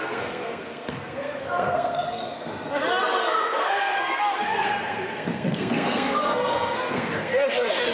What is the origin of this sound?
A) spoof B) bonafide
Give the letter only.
A